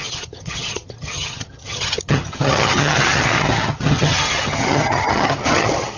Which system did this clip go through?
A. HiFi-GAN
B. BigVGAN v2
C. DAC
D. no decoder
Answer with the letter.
A